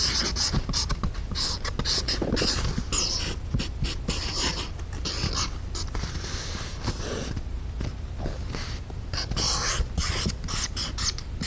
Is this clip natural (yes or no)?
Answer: yes